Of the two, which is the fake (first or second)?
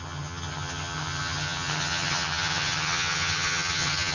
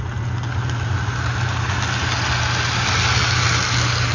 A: first